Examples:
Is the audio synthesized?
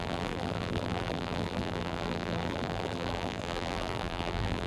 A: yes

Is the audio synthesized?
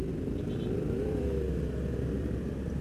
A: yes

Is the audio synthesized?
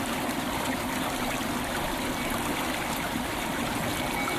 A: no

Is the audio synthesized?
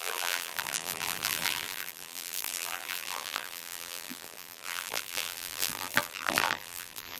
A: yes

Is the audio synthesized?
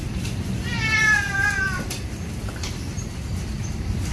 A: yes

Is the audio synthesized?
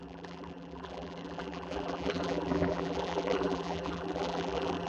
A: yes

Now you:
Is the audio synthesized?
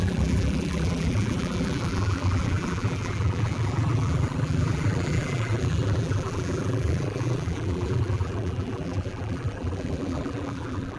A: yes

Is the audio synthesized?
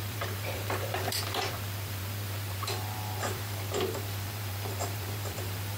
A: yes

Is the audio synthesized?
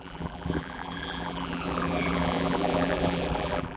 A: yes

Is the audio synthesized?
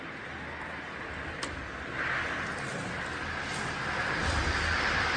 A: no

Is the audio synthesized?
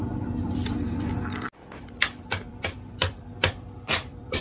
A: yes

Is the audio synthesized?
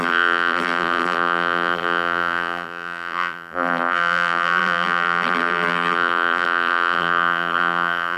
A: yes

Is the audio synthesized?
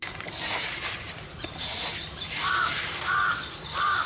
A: yes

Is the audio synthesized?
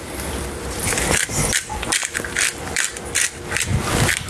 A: yes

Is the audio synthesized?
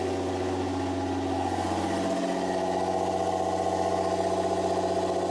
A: no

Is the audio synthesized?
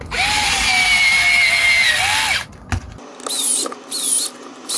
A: no